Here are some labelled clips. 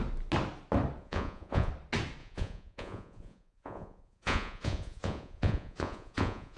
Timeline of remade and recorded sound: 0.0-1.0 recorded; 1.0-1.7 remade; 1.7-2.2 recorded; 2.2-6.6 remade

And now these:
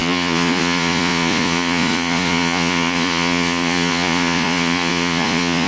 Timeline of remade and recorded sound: 0.0-5.7 remade

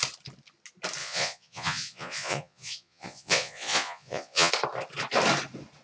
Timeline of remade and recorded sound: 0.0-1.0 recorded; 1.0-4.5 remade; 4.5-5.8 recorded

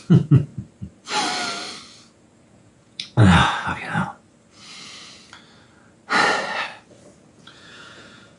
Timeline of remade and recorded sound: 0.0-0.5 remade; 0.5-2.5 recorded; 2.5-4.1 remade; 4.1-7.3 recorded; 7.3-8.4 remade

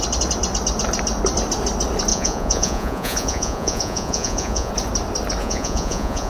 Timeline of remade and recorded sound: 0.0-2.1 recorded; 2.1-4.7 remade; 4.7-5.4 recorded; 5.4-6.3 remade

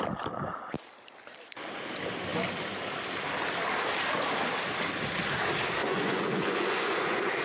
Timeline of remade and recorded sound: 0.0-5.8 recorded; 5.8-7.4 remade